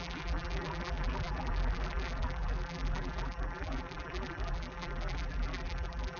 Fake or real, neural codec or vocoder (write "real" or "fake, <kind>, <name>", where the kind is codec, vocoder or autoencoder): fake, vocoder, BigVGAN v2